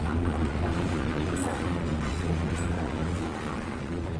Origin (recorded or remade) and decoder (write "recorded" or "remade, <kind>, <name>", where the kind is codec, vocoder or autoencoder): remade, vocoder, Vocos